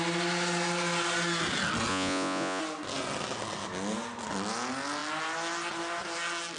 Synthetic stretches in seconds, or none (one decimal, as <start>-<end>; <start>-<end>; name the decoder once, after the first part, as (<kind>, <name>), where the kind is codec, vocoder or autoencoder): 1.9-2.6 (vocoder, Vocos)